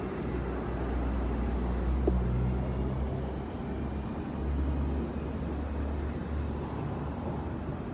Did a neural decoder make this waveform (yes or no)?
no